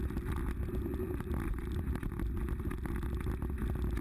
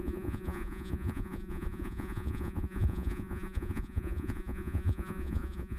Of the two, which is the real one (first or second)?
first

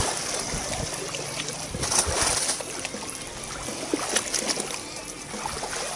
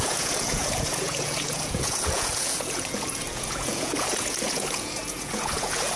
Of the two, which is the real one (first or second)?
first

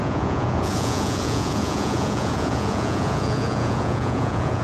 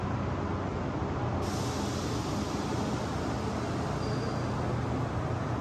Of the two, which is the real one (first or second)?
second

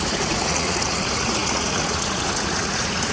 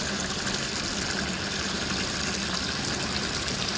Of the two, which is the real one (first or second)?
second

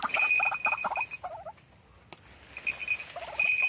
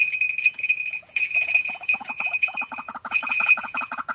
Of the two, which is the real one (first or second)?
first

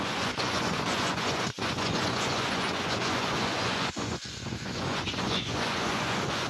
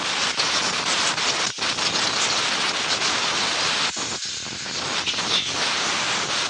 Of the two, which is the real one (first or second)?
second